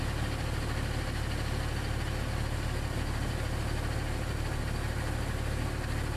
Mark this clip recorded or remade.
recorded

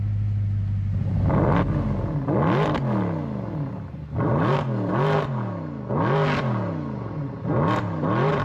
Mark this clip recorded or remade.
recorded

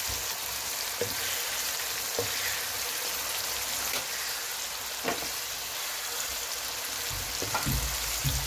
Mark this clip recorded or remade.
recorded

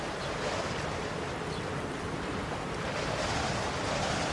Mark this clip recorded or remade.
recorded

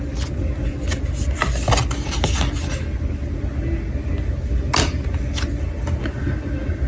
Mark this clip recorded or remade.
recorded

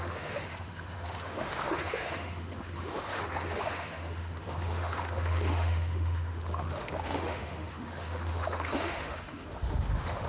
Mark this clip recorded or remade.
remade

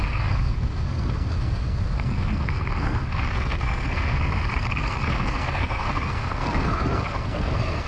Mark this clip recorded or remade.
remade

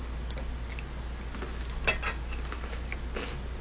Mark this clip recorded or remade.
recorded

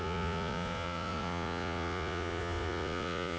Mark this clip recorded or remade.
remade